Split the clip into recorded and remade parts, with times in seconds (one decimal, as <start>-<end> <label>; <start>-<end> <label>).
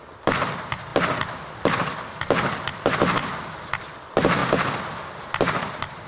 0.0-6.1 recorded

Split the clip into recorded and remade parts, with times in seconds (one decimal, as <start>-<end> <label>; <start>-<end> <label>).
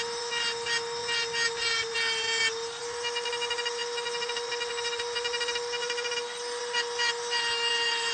0.0-8.1 recorded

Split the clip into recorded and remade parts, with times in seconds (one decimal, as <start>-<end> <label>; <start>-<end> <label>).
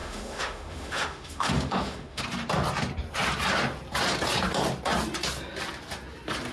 0.0-2.2 remade; 2.2-6.5 recorded